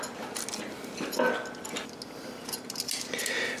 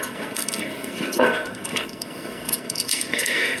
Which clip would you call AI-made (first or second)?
second